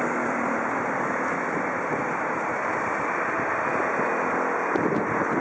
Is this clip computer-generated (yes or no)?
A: no